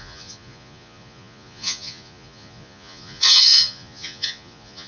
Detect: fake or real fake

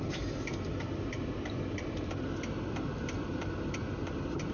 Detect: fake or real fake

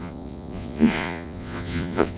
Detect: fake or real fake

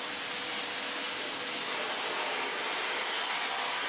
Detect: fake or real real